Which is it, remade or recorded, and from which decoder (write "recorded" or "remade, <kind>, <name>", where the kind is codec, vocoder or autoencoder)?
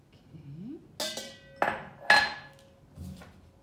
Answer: recorded